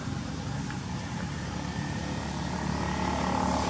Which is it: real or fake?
real